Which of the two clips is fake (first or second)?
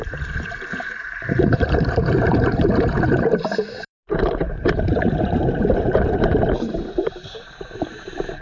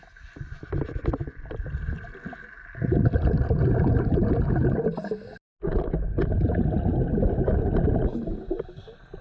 first